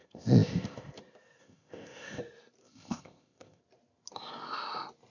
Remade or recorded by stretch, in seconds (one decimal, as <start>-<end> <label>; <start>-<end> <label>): 0.0-1.0 remade; 1.0-1.4 recorded; 1.4-2.2 remade; 2.2-2.6 recorded; 2.6-3.6 remade; 3.6-5.1 recorded